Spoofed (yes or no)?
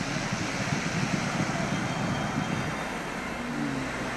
no